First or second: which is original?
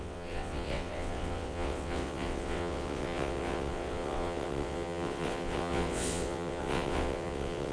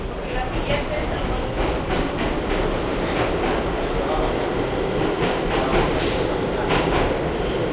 second